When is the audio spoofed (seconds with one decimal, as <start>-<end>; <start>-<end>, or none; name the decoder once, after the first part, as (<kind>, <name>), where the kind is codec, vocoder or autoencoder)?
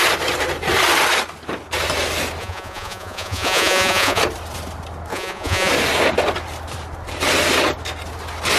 2.4-4.2 (vocoder, Vocos); 5.1-5.7